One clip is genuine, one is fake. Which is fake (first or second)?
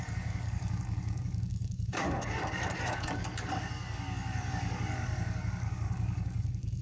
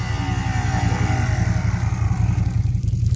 first